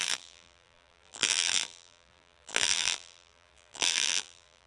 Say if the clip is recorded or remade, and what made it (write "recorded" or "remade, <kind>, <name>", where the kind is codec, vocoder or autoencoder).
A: remade, vocoder, BigVGAN v2